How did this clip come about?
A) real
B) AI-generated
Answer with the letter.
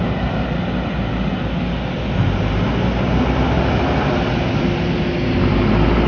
A